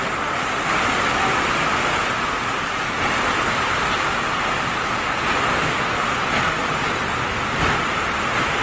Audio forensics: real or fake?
real